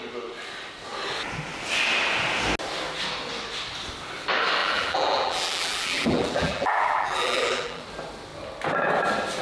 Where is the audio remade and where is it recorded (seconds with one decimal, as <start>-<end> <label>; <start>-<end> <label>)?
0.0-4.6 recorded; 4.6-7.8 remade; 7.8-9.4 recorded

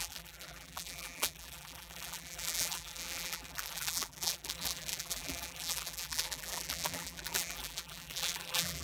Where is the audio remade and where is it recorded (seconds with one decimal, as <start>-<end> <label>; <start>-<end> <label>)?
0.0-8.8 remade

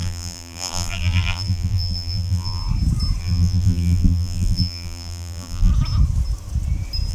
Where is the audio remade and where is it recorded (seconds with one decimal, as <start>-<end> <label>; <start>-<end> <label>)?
0.0-2.6 remade; 2.6-3.2 recorded; 3.2-5.7 remade; 5.7-7.1 recorded

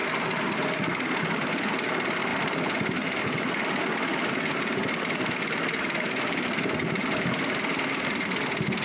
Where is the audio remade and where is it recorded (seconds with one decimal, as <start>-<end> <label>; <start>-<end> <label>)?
0.0-1.2 remade; 1.2-2.3 recorded; 2.3-7.3 remade; 7.3-8.8 recorded

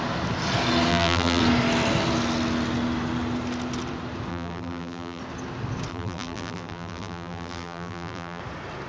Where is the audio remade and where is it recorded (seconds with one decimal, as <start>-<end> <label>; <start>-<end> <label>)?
0.0-0.9 recorded; 0.9-1.4 remade; 1.4-4.3 recorded; 4.3-5.2 remade; 5.2-5.9 recorded; 5.9-8.4 remade; 8.4-8.9 recorded